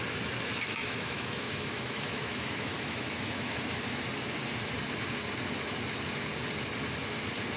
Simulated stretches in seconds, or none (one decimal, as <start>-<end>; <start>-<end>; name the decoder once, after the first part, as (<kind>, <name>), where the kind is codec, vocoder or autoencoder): 0.7-4.0 (autoencoder, DAC-VAE)